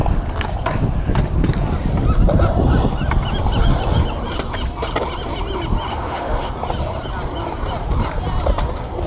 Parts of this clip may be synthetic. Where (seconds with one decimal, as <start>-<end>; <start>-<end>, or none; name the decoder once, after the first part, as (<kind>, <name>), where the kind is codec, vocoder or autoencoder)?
5.9-6.5 (autoencoder, DAC-VAE)